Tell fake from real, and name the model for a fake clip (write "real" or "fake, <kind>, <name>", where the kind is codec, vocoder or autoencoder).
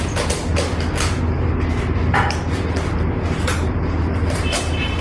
real